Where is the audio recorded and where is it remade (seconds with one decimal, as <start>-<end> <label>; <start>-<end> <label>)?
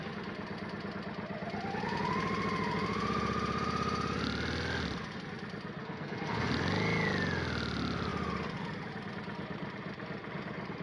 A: 0.0-5.8 recorded; 5.8-6.5 remade; 6.5-10.8 recorded